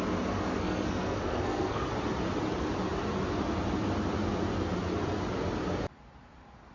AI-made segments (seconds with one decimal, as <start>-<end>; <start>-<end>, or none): 0.5-1.9